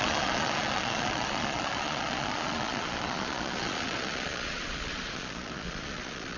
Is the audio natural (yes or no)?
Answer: no